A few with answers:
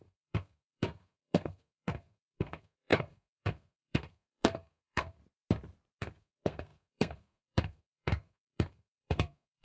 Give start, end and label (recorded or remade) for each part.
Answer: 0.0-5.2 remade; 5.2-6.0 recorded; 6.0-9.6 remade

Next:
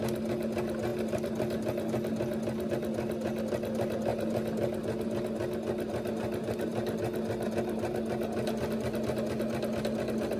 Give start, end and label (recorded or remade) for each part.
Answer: 0.0-10.4 recorded

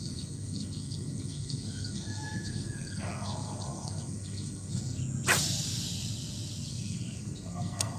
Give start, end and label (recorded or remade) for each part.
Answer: 0.0-5.0 remade; 5.0-6.7 recorded; 6.7-8.0 remade

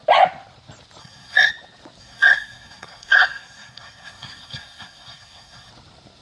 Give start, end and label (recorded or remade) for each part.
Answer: 0.0-1.0 recorded; 1.0-1.5 remade; 1.5-2.0 recorded; 2.0-5.7 remade; 5.7-6.2 recorded

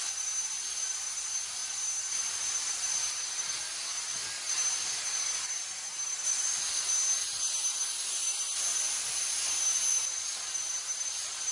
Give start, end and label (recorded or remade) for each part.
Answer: 0.0-11.5 recorded

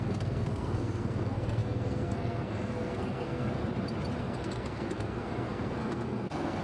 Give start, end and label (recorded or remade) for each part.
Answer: 0.0-3.6 remade; 3.6-4.2 recorded; 4.2-6.6 remade

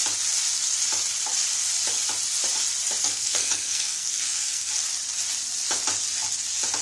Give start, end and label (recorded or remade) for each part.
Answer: 0.0-3.0 recorded; 3.0-4.7 remade; 4.7-6.8 recorded

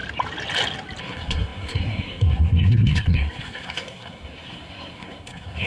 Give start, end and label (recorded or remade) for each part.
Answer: 0.0-1.0 recorded; 1.0-5.7 remade